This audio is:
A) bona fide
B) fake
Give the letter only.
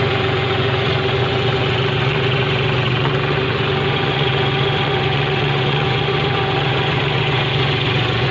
B